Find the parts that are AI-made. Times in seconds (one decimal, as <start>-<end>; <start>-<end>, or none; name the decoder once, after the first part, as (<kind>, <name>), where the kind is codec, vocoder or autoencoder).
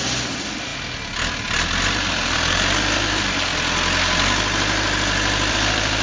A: 0.0-0.7 (vocoder, BigVGAN v2); 2.1-3.5; 5.5-6.0